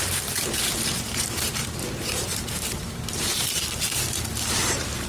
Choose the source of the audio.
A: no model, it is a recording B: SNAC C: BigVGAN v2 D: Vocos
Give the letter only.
C